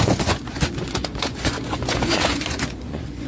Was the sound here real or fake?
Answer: fake